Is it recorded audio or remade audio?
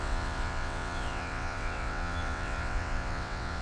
remade